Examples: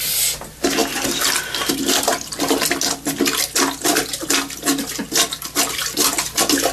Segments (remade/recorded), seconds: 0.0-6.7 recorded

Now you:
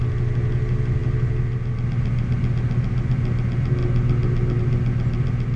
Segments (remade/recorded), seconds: 0.0-5.6 recorded